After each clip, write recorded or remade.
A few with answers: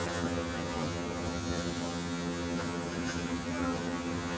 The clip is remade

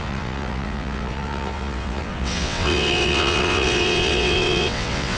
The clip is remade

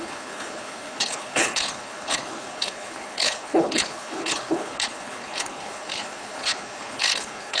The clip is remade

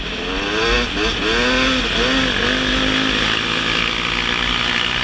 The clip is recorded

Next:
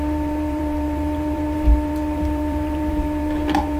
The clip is remade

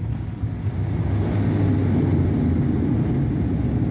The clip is recorded